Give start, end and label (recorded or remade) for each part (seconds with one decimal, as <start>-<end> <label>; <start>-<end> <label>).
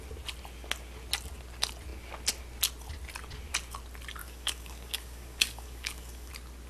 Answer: 0.0-4.2 recorded; 4.2-6.3 remade; 6.3-6.7 recorded